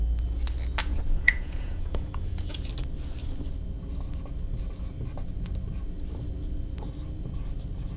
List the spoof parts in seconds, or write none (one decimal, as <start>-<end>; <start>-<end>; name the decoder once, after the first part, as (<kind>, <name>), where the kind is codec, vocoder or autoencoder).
0.8-2.7 (vocoder, Vocos)